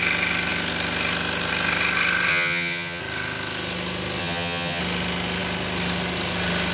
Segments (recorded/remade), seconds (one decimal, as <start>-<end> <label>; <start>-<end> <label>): 0.0-2.3 recorded; 2.3-3.0 remade; 3.0-4.2 recorded; 4.2-4.8 remade; 4.8-6.7 recorded